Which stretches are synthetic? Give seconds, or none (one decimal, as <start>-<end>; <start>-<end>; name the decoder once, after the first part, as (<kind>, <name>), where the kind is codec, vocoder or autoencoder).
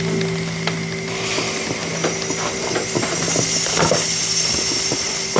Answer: none